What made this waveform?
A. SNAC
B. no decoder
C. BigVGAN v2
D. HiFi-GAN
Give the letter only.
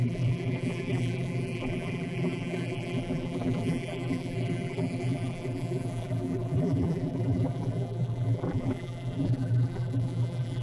C